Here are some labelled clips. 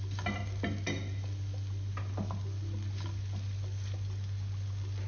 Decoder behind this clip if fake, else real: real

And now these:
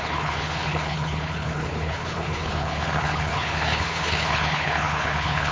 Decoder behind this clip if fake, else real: fake, codec, HILCodec